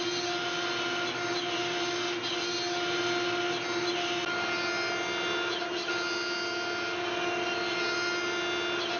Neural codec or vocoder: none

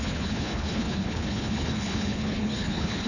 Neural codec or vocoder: codec, HILCodec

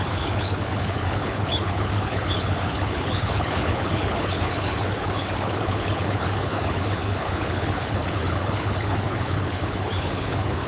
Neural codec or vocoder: codec, HILCodec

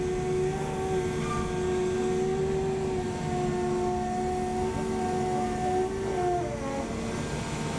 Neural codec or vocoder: none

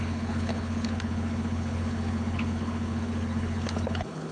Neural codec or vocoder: codec, HILCodec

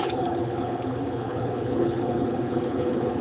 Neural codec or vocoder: codec, HILCodec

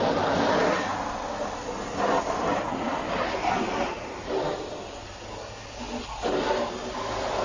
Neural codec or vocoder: none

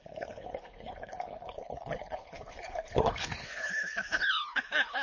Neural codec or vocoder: codec, HILCodec